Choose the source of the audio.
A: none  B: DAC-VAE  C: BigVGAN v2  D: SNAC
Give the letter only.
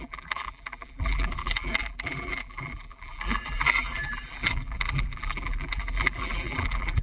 C